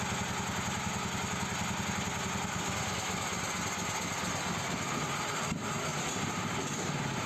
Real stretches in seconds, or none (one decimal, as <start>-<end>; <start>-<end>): 0.0-5.9